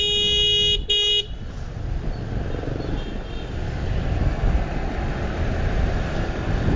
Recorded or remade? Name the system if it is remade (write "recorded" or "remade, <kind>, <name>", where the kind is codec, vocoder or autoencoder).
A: recorded